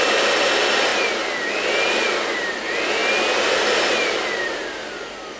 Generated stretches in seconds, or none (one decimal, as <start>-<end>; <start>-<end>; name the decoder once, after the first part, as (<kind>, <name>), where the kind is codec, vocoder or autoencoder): none